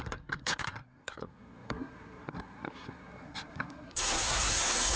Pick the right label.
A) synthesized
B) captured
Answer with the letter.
A